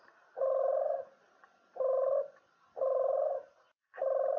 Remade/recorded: recorded